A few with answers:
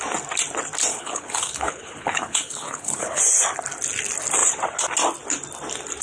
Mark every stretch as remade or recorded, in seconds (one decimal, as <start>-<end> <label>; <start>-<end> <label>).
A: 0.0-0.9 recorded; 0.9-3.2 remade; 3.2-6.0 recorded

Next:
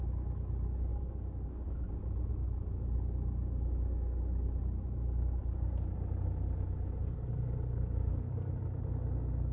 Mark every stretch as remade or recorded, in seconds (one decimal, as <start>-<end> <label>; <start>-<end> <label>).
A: 0.0-0.9 recorded; 0.9-1.8 remade; 1.8-7.0 recorded; 7.0-8.5 remade; 8.5-9.5 recorded

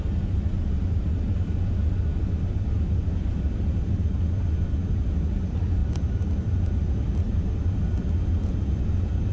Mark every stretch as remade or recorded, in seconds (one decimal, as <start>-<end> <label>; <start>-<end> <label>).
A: 0.0-5.8 recorded; 5.8-9.3 remade

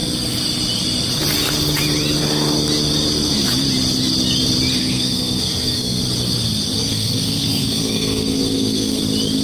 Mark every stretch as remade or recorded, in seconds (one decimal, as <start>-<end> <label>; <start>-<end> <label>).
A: 0.0-4.8 recorded; 4.8-6.0 remade; 6.0-6.8 recorded; 6.8-9.0 remade; 9.0-9.4 recorded

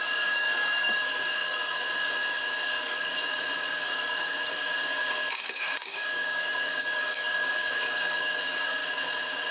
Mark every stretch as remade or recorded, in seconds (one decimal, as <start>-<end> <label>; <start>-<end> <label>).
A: 0.0-8.8 remade; 8.8-9.5 recorded